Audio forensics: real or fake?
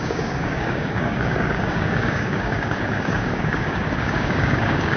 fake